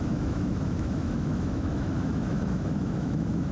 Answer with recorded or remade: remade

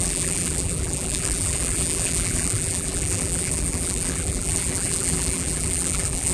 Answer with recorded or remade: remade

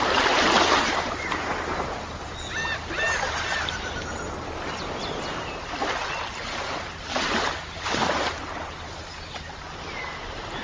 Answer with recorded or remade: recorded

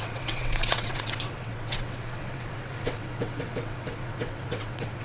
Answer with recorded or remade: remade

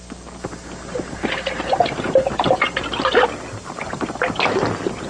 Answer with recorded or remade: recorded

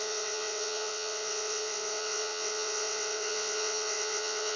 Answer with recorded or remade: remade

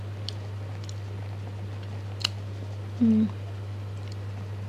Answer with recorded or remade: recorded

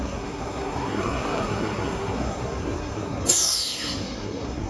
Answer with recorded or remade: remade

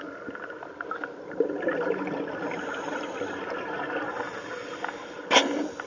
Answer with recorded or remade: recorded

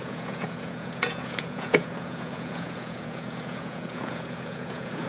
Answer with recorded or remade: remade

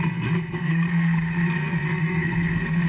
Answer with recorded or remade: remade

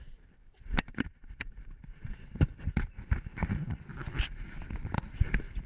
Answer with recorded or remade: recorded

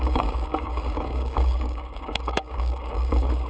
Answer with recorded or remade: remade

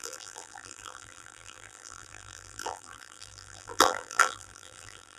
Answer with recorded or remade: remade